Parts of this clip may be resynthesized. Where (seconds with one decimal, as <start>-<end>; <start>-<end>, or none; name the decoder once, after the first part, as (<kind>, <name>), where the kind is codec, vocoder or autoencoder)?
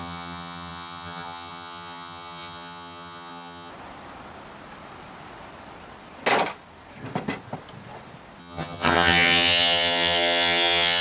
0.0-3.7 (vocoder, HiFi-GAN); 8.4-11.0